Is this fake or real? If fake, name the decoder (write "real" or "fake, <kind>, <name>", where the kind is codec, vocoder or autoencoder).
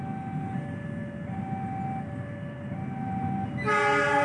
real